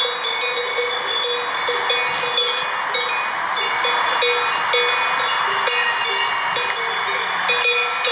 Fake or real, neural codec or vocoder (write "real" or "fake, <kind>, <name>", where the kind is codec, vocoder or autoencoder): real